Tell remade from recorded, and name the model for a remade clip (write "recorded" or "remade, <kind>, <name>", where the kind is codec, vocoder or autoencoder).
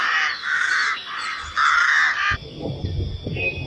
recorded